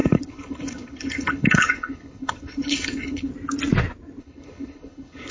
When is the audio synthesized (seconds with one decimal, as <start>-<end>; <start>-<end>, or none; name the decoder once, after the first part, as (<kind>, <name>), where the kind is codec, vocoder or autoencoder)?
0.0-3.3 (codec, HILCodec); 4.2-5.3